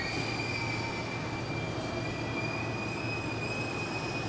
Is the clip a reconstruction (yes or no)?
no